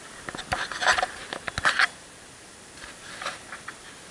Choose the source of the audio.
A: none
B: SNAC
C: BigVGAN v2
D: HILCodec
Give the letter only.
A